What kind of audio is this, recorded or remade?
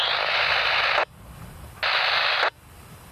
recorded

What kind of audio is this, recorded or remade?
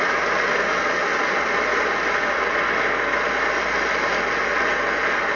recorded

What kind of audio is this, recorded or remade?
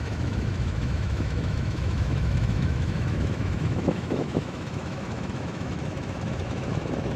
remade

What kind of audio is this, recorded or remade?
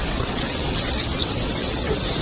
remade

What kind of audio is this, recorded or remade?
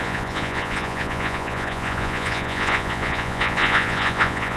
remade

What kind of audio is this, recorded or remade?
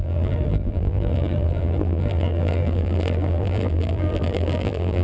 remade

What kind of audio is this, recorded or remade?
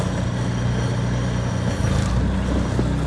recorded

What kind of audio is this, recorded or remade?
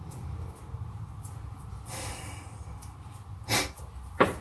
recorded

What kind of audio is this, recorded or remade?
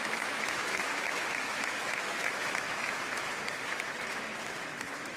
remade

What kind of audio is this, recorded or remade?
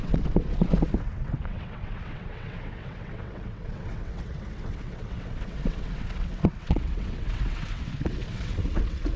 remade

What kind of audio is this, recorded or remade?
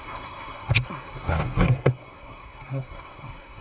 remade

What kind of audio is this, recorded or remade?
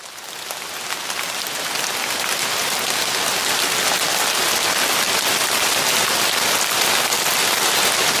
recorded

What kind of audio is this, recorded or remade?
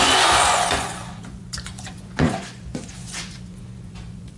remade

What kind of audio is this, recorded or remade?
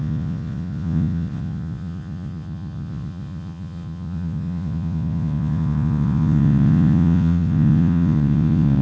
remade